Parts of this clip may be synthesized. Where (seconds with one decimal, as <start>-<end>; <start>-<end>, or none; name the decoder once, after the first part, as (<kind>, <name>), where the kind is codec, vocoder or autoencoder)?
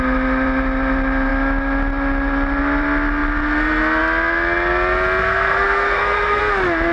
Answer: 5.2-6.4 (codec, SNAC)